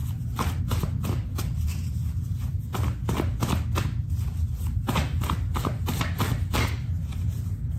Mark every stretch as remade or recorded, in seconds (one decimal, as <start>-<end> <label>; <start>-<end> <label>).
0.0-0.6 recorded; 0.6-2.7 remade; 2.7-7.0 recorded; 7.0-7.8 remade